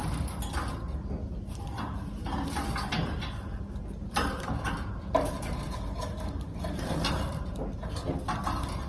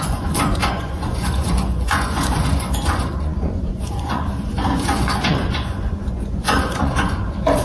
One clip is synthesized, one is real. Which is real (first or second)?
first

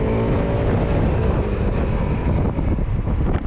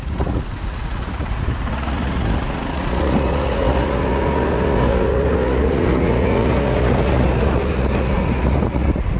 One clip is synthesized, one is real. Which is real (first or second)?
first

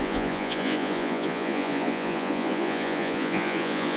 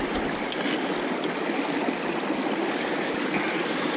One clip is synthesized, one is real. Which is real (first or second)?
second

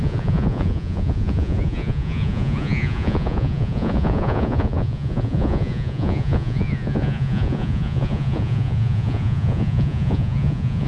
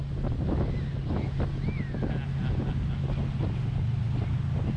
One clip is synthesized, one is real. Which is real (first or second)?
second